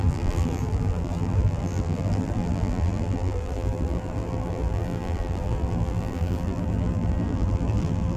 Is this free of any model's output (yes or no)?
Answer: no